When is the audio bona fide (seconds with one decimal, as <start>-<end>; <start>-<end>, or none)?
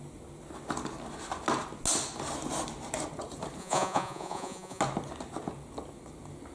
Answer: 0.0-3.6; 4.8-6.5